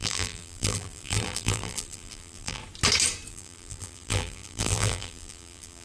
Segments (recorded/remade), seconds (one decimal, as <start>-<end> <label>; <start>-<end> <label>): 0.0-2.6 remade; 2.6-3.3 recorded; 3.3-5.8 remade

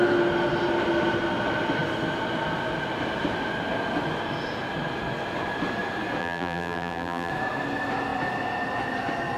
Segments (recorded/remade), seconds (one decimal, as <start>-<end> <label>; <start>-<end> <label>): 0.0-6.2 recorded; 6.2-7.3 remade; 7.3-9.4 recorded